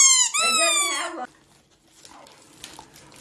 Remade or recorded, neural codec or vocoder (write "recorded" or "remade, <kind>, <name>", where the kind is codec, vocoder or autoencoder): recorded